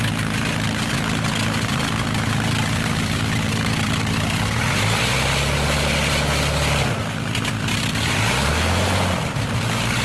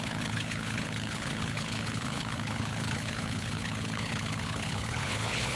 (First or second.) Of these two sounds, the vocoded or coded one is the second